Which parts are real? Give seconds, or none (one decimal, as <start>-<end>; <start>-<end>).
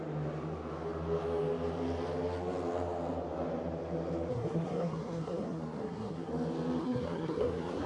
0.0-4.3; 6.3-6.8